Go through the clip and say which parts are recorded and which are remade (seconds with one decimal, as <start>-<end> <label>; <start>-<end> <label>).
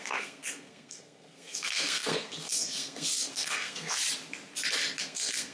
0.0-4.0 remade; 4.0-5.0 recorded; 5.0-5.5 remade